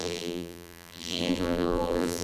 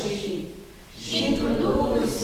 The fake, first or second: first